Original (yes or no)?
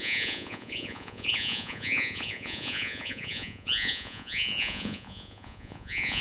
no